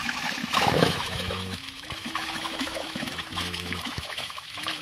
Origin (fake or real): fake